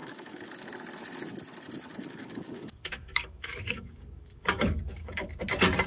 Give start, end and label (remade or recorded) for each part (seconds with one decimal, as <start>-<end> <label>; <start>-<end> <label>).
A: 0.0-0.5 remade; 0.5-1.9 recorded; 1.9-5.4 remade; 5.4-5.9 recorded